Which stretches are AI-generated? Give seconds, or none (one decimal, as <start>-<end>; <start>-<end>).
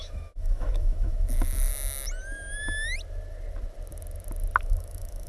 0.0-1.7; 4.6-5.3